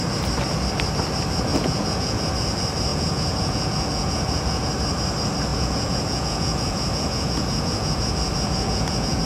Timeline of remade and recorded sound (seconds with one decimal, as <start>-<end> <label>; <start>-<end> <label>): 0.0-1.5 recorded; 1.5-2.3 remade; 2.3-2.9 recorded; 2.9-4.7 remade; 4.7-5.5 recorded; 5.5-9.2 remade